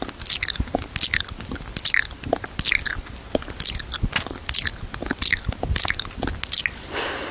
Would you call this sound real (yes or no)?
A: yes